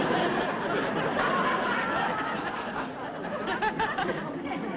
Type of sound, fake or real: real